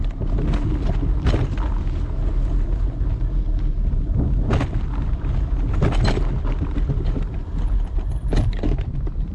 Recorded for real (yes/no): yes